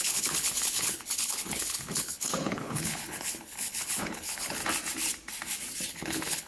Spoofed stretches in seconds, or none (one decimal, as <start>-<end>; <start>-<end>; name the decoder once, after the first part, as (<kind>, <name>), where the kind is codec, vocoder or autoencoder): 0.0-4.6 (codec, HILCodec); 5.9-6.5